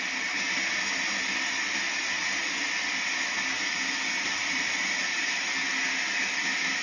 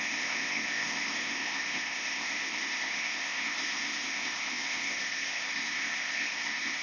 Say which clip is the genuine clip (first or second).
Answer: first